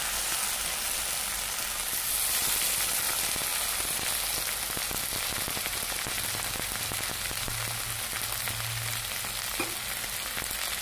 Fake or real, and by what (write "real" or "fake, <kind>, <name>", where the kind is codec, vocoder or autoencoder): real